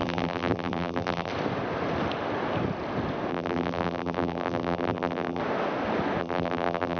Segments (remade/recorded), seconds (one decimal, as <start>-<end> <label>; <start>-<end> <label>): 0.0-1.3 remade; 1.3-3.3 recorded; 3.3-5.4 remade; 5.4-6.2 recorded; 6.2-7.0 remade